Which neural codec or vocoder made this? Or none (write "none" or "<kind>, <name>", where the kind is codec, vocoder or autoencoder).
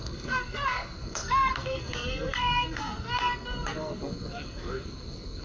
codec, SNAC